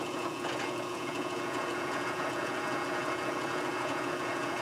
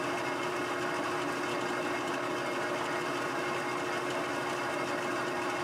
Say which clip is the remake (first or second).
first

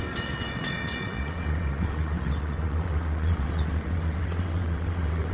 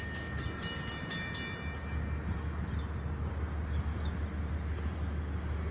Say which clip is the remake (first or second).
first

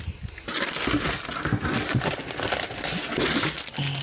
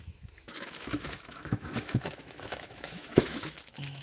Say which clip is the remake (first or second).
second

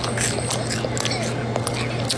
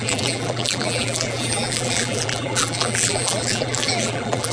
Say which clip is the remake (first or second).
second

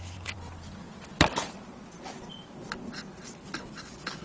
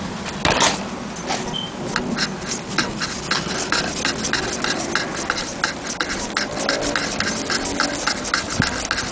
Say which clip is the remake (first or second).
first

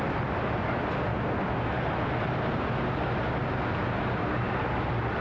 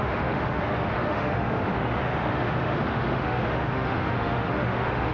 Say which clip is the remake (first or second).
second